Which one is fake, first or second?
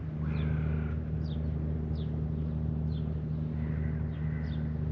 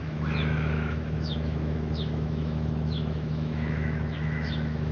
second